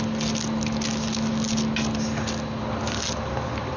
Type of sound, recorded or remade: recorded